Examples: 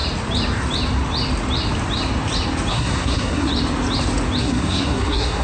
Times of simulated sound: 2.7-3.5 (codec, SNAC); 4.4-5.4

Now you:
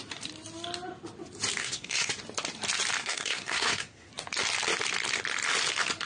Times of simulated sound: 1.6-2.1 (codec, SNAC); 3.0-4.1

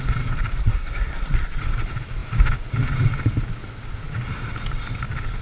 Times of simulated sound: 0.6-1.6 (codec, SNAC)

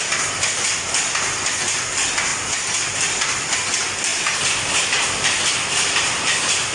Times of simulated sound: none

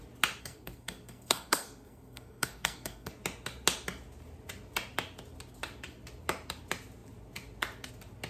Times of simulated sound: 0.4-3.1 (codec, SNAC)

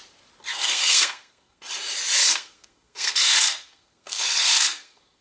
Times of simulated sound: 0.5-1.6 (codec, SNAC); 2.2-5.2